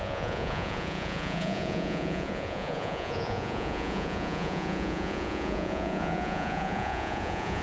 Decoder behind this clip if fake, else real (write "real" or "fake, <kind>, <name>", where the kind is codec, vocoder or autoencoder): fake, vocoder, Vocos